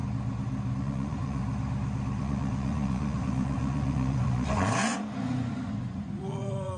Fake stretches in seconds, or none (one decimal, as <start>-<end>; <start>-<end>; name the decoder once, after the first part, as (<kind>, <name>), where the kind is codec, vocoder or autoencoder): 0.8-1.4 (vocoder, Vocos); 2.2-6.8